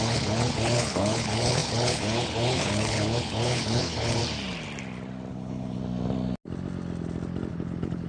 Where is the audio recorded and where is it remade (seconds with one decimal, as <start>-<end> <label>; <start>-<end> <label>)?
0.0-4.2 remade; 4.2-5.3 recorded; 5.3-5.8 remade; 5.8-7.5 recorded; 7.5-8.1 remade